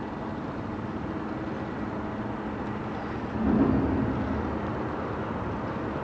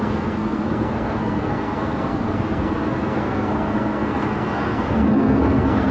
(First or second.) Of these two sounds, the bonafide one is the first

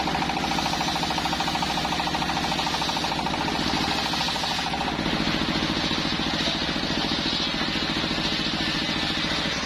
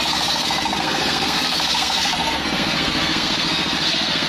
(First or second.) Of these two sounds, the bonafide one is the first